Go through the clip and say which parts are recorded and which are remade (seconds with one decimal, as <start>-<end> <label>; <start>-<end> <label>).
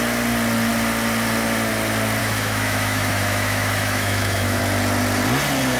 0.0-2.2 recorded; 2.2-4.6 remade; 4.6-5.8 recorded